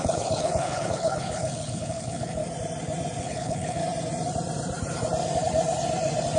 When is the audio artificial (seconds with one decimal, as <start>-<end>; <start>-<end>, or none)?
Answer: 0.0-2.4; 3.2-3.8